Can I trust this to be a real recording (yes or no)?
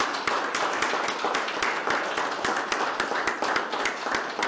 yes